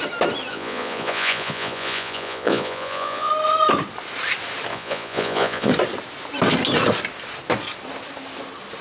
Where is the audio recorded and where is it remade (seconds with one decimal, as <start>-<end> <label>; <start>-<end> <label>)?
0.0-0.5 recorded; 0.5-3.3 remade; 3.3-4.7 recorded; 4.7-5.7 remade; 5.7-8.8 recorded